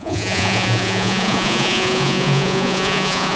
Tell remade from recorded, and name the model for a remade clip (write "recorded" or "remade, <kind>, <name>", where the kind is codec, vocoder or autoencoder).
remade, vocoder, Vocos